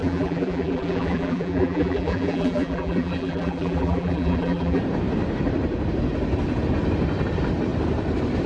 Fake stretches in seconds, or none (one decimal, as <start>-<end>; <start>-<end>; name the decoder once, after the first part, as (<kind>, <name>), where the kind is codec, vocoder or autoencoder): 0.0-4.8 (vocoder, BigVGAN v2)